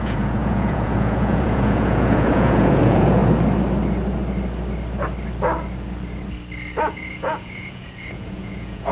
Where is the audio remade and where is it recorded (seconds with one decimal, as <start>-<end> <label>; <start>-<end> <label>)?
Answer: 0.0-3.2 remade; 3.2-6.8 recorded; 6.8-8.9 remade